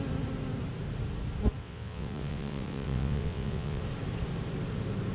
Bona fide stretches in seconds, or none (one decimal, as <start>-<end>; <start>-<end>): 0.0-1.6; 3.8-5.1